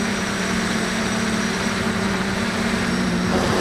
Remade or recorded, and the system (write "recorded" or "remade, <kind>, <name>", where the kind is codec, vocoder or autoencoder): remade, vocoder, BigVGAN v2